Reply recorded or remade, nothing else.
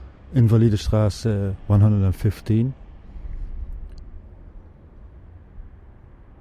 recorded